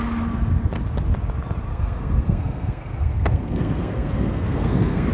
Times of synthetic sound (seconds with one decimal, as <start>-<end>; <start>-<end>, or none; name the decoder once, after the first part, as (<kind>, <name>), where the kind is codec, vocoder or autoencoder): 1.7-5.1 (codec, SNAC)